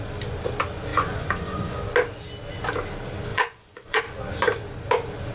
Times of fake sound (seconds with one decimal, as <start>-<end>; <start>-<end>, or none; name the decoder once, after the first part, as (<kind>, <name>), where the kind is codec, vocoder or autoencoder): 0.9-1.8 (vocoder, Vocos); 3.3-4.0